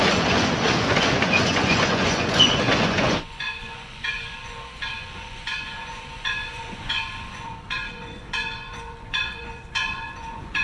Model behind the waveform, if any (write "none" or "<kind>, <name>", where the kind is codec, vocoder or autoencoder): vocoder, Vocos